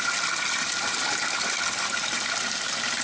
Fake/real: real